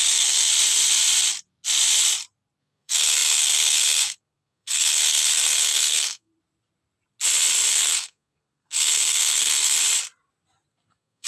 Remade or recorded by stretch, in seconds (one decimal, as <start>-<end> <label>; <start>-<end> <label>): 0.0-0.5 remade; 0.5-2.6 recorded; 2.6-6.3 remade; 6.3-7.7 recorded; 7.7-9.8 remade; 9.8-10.7 recorded; 10.7-11.3 remade